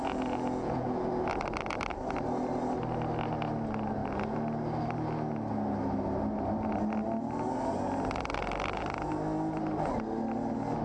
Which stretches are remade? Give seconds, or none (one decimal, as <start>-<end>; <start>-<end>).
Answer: 0.0-1.1

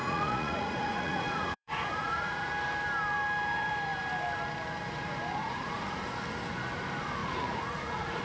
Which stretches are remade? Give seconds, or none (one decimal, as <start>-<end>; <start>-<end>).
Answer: 0.0-2.5; 5.4-6.0; 7.2-8.2

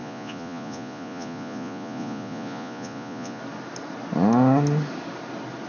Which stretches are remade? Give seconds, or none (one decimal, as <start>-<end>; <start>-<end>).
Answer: 0.0-3.4

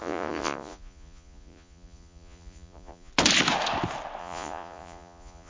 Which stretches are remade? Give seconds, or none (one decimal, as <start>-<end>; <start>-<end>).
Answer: 0.0-3.1; 4.2-5.5